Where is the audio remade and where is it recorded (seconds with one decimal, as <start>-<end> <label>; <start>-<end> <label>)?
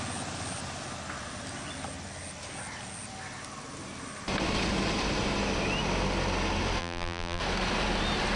0.0-6.8 recorded; 6.8-7.4 remade; 7.4-8.4 recorded